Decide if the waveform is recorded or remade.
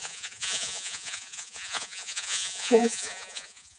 remade